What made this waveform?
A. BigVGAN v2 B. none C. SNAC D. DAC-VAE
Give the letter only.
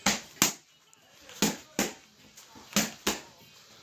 B